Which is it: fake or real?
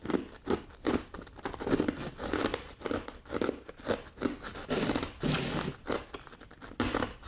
real